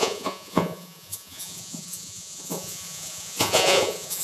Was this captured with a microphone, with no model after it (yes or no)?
no